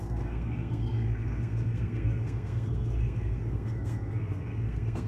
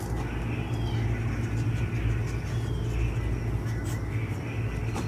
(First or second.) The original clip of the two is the second